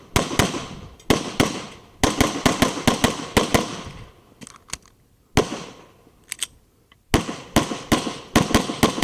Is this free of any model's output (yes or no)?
yes